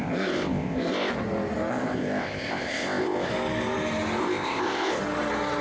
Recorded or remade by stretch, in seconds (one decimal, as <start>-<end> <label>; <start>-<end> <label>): 0.0-1.1 remade; 1.1-1.7 recorded; 1.7-3.3 remade; 3.3-4.2 recorded; 4.2-5.0 remade; 5.0-5.6 recorded